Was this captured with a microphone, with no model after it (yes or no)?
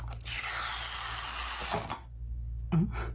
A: yes